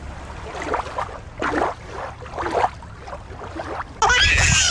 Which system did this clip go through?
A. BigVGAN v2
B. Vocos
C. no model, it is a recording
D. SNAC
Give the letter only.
C